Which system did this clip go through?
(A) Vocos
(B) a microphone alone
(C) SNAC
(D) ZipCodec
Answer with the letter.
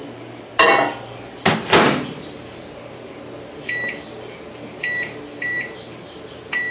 B